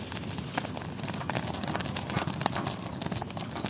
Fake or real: real